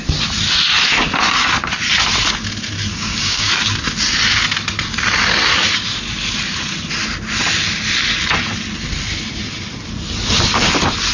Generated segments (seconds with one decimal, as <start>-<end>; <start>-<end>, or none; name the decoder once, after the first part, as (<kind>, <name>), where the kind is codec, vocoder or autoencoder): 2.9-3.5 (codec, DAC)